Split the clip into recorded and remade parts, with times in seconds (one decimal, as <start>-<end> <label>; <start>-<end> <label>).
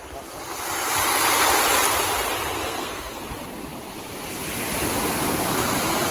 0.0-2.6 recorded; 2.6-3.2 remade; 3.2-6.1 recorded